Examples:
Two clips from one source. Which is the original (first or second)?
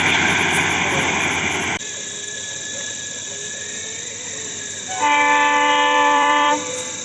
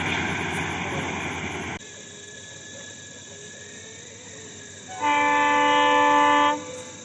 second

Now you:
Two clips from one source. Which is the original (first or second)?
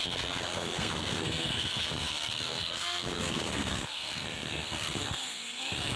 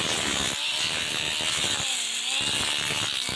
second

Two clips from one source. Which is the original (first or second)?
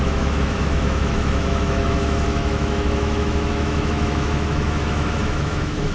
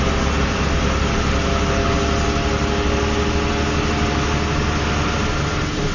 second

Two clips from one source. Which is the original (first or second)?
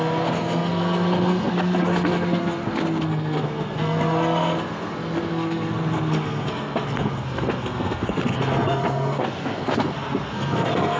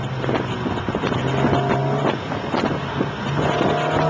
second